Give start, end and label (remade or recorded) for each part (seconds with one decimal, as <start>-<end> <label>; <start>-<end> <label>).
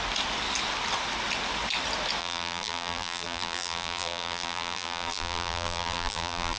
0.0-2.2 recorded; 2.2-6.6 remade